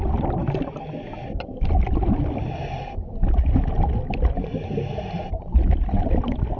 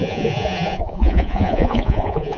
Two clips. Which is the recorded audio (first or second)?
first